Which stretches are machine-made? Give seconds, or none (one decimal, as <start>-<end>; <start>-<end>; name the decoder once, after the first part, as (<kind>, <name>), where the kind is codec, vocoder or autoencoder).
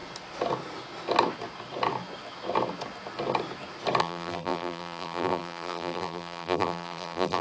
4.0-7.4 (vocoder, BigVGAN v2)